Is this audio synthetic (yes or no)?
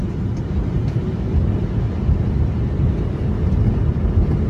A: no